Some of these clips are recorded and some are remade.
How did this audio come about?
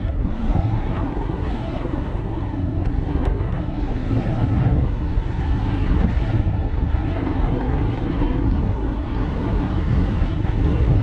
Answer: remade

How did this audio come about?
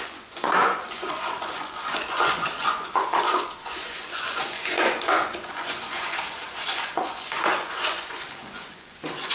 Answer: remade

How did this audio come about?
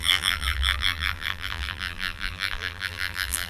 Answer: remade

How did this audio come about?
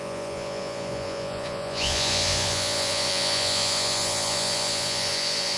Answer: remade